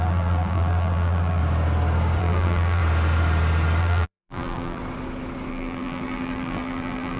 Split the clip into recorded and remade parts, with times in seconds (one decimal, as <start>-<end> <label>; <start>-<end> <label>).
0.0-1.4 remade; 1.4-2.2 recorded; 2.2-2.8 remade; 2.8-3.8 recorded; 3.8-4.8 remade; 4.8-5.5 recorded; 5.5-7.2 remade

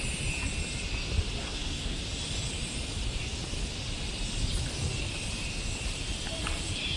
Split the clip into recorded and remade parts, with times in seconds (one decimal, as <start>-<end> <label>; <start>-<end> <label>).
0.0-1.4 recorded; 1.4-2.0 remade; 2.0-7.0 recorded

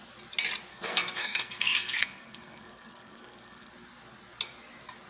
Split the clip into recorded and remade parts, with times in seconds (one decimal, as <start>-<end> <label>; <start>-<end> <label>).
0.0-0.7 recorded; 0.7-3.7 remade; 3.7-5.1 recorded

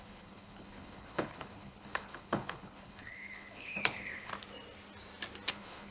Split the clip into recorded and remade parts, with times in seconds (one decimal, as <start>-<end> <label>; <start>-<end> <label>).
0.0-4.3 remade; 4.3-5.5 recorded; 5.5-5.9 remade

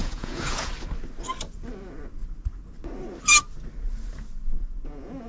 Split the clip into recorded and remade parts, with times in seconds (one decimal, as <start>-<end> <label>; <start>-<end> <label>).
0.0-0.7 remade; 0.7-4.6 recorded; 4.6-5.3 remade

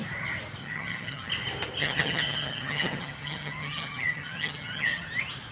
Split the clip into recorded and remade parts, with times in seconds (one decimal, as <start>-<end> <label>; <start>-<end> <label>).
0.0-0.6 recorded; 0.6-1.3 remade; 1.3-1.8 recorded; 1.8-5.1 remade; 5.1-5.5 recorded

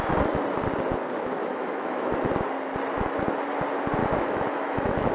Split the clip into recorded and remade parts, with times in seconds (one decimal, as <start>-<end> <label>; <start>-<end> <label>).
0.0-1.4 recorded; 1.4-2.1 remade; 2.1-4.0 recorded; 4.0-5.1 remade

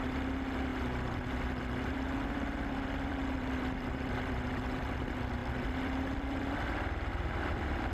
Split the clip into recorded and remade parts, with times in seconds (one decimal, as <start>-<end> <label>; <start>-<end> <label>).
0.0-7.9 remade